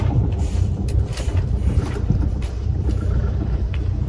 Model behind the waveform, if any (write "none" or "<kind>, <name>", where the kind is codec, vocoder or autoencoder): vocoder, BigVGAN v2